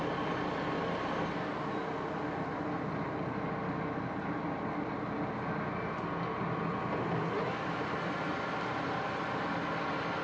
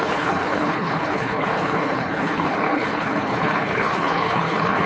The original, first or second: first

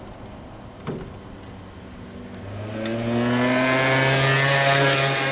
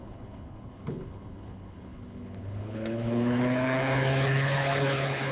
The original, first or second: first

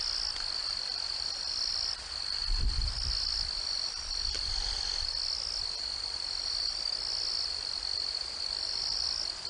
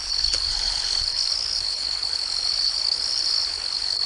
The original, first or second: first